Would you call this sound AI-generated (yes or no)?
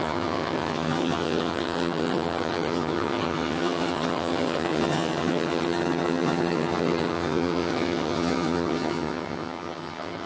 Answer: yes